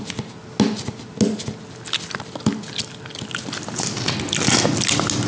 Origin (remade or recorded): recorded